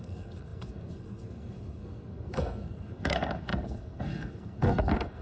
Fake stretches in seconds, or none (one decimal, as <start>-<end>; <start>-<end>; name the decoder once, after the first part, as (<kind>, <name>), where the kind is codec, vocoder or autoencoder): 0.0-5.2 (codec, SNAC)